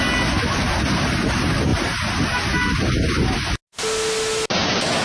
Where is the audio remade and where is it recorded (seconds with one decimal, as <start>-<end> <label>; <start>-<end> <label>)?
0.0-5.0 recorded